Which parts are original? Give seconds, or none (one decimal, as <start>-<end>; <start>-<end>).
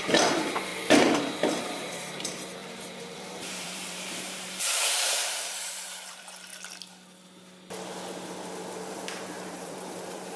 0.7-1.2; 6.5-8.9